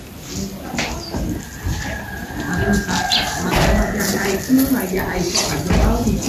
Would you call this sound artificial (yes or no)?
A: no